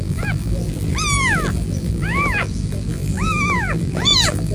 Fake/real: fake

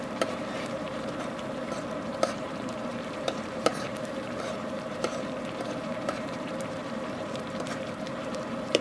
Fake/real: fake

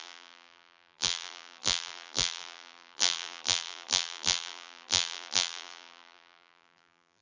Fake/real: fake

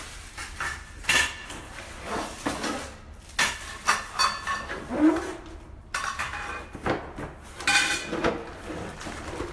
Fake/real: real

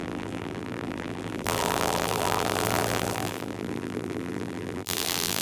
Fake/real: fake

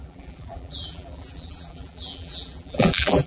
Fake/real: fake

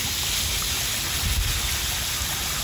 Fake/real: real